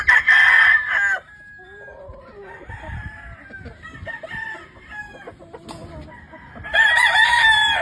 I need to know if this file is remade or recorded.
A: recorded